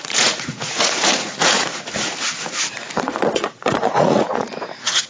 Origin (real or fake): fake